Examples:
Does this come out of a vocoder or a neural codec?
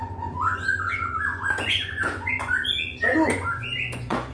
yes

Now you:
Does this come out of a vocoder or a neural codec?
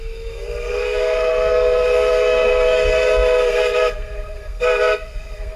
yes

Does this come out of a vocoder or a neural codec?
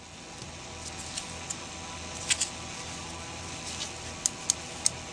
no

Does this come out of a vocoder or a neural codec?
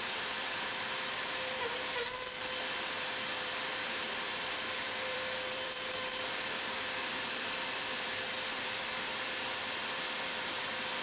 yes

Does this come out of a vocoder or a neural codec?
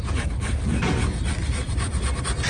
no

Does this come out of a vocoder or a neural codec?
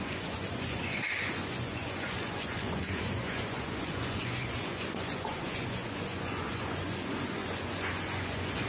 yes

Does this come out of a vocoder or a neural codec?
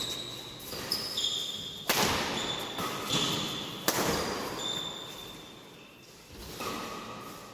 no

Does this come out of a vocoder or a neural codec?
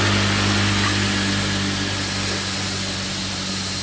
no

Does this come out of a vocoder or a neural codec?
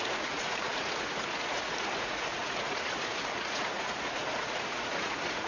yes